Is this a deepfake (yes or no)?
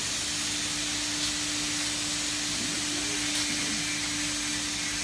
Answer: no